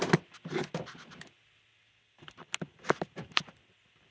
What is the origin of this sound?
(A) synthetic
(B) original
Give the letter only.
B